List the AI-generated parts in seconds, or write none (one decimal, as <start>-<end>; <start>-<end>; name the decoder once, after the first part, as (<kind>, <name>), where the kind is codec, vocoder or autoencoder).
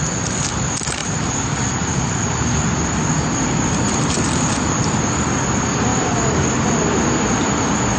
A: 1.0-4.1 (vocoder, BigVGAN v2); 5.9-6.6